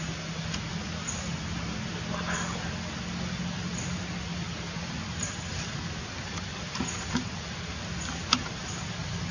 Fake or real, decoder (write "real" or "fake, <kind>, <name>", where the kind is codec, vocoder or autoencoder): real